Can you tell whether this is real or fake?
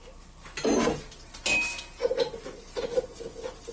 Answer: real